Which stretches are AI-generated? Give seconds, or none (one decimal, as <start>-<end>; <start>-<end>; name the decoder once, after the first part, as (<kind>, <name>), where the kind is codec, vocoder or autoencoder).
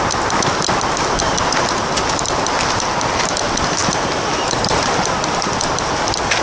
3.8-5.6 (vocoder, BigVGAN v2)